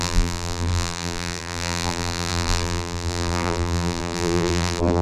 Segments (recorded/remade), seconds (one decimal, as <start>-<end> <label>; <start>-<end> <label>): 0.0-5.0 remade